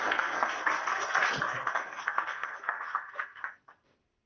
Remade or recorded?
remade